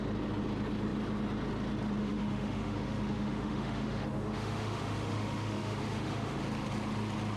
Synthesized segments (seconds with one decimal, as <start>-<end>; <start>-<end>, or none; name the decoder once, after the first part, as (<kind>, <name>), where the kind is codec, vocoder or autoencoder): 2.0-6.4 (autoencoder, DAC-VAE)